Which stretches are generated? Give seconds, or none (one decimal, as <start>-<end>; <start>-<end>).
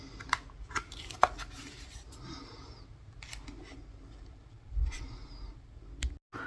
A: none